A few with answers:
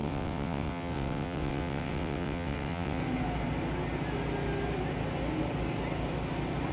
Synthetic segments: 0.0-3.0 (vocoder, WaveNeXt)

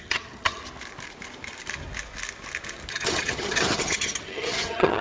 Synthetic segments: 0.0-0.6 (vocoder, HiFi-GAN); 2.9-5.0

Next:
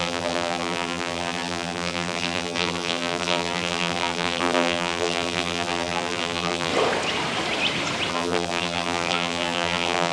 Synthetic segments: 0.0-6.7 (vocoder, BigVGAN v2); 8.1-10.1

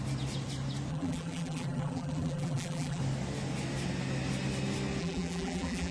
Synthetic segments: 0.9-3.0 (vocoder, BigVGAN v2); 5.0-5.9

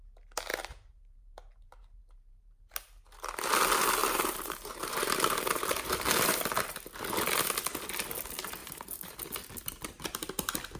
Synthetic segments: 0.5-2.6 (vocoder, BigVGAN v2); 4.0-6.3; 8.6-9.2

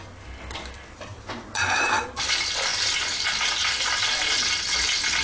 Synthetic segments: 1.1-2.3 (vocoder, BigVGAN v2)